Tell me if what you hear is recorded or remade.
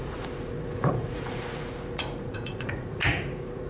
remade